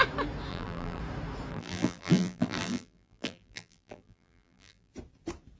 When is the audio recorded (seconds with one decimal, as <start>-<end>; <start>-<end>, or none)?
0.0-0.5; 1.0-1.5; 4.9-5.6